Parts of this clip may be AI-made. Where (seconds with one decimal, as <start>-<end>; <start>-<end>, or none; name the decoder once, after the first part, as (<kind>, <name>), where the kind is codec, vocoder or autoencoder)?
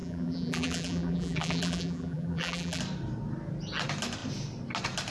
0.0-2.8 (vocoder, BigVGAN v2)